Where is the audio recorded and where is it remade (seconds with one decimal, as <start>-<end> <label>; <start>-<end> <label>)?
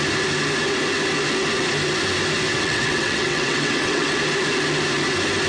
0.0-2.5 recorded; 2.5-4.2 remade; 4.2-5.5 recorded